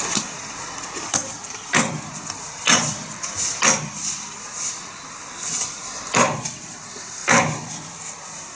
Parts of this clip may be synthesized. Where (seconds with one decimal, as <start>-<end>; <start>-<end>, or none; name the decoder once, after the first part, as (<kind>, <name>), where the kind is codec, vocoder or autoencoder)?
0.0-7.2 (vocoder, BigVGAN v2)